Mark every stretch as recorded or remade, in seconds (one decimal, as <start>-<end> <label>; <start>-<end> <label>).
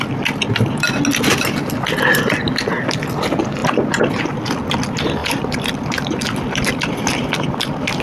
0.0-5.2 recorded; 5.2-5.7 remade; 5.7-8.0 recorded